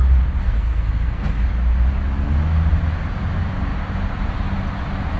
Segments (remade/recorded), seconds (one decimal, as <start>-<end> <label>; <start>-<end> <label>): 0.0-0.4 recorded; 0.4-1.5 remade; 1.5-5.2 recorded